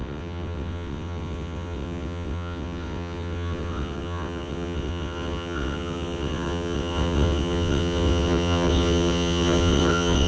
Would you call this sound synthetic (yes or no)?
yes